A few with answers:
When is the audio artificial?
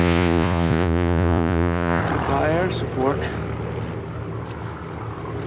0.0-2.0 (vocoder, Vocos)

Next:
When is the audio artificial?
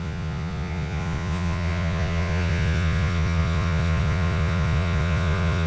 0.0-5.7 (vocoder, Vocos)